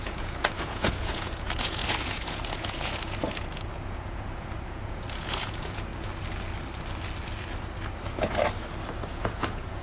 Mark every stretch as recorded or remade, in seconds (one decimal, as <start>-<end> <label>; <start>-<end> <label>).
0.0-5.9 remade; 5.9-9.0 recorded; 9.0-9.8 remade